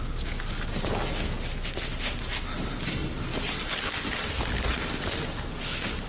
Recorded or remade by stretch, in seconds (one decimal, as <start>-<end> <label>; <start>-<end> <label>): 0.0-6.1 recorded